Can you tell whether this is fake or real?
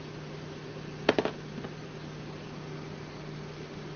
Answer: real